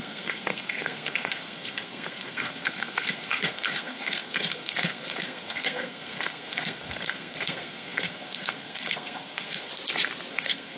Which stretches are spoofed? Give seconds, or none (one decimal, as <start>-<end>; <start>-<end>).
0.0-9.7; 10.3-10.8

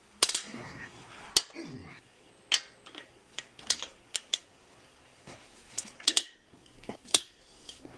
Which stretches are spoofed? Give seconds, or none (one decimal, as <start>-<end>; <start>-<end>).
0.0-1.3; 1.9-2.3; 2.9-8.0

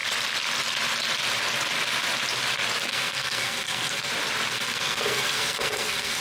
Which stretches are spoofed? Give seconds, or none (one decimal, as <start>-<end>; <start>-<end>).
2.9-4.1; 4.5-6.2